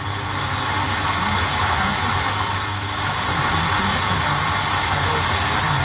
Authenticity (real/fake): real